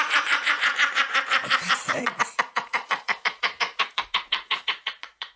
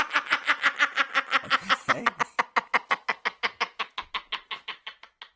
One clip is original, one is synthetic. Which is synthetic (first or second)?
first